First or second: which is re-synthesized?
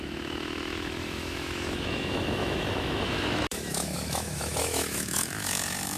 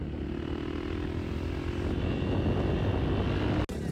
first